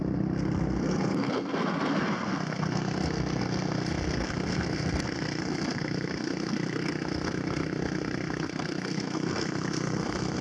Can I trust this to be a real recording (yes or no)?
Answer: no